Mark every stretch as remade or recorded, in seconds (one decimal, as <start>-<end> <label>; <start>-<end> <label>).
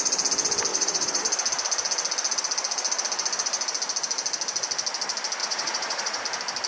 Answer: 0.0-0.7 recorded; 0.7-1.2 remade; 1.2-5.4 recorded; 5.4-6.2 remade; 6.2-6.7 recorded